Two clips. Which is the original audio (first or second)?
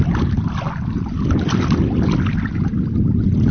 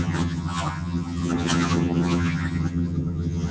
first